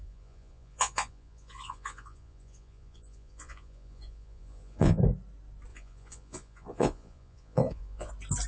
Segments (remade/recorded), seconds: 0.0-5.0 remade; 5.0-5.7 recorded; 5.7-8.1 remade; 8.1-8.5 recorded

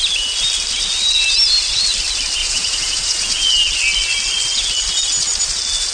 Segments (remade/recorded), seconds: 0.0-2.4 recorded; 2.4-3.5 remade; 3.5-5.9 recorded